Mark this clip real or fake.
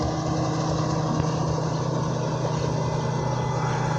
real